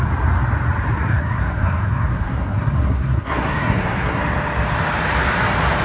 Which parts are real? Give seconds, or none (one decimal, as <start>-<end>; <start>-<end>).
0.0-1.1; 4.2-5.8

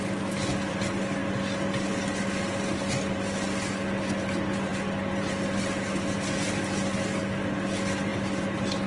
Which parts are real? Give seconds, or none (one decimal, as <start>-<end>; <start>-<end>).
0.0-8.9

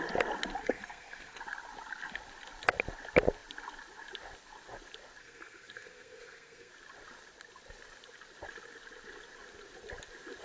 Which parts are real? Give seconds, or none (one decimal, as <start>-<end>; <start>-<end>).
0.0-0.6; 1.4-5.2; 6.7-10.4

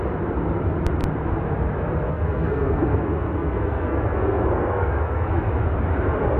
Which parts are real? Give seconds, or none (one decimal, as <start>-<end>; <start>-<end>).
0.0-2.1; 5.5-6.4

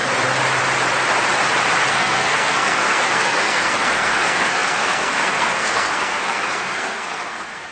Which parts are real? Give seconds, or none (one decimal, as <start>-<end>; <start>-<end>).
0.0-1.9